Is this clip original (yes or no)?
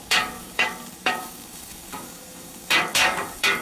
no